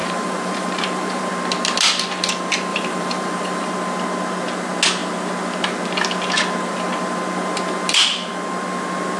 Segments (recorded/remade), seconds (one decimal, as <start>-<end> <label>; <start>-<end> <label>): 0.0-1.3 remade; 1.3-2.7 recorded; 2.7-3.7 remade; 3.7-9.2 recorded